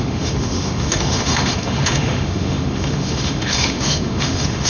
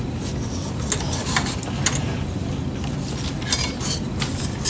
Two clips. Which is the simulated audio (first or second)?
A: first